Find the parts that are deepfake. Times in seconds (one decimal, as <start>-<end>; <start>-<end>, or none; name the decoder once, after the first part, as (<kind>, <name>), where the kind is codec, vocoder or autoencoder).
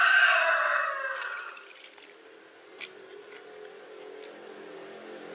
none